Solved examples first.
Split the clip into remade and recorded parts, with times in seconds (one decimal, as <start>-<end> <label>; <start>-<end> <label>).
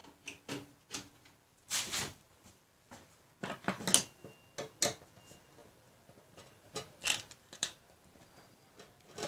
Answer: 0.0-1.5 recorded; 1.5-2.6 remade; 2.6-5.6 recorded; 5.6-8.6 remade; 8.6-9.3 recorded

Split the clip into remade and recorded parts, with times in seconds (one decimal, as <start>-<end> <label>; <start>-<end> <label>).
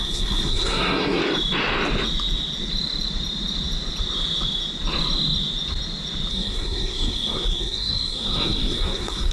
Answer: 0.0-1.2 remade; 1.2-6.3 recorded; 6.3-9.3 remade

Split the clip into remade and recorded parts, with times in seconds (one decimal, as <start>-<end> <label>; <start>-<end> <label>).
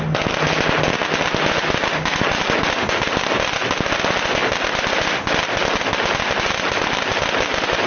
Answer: 0.0-7.9 recorded